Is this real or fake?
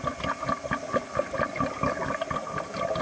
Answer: real